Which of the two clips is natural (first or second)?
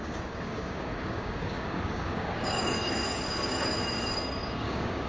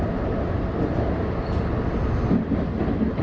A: second